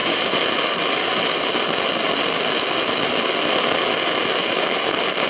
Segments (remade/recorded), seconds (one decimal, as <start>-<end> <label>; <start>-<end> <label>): 0.0-4.3 recorded; 4.3-5.3 remade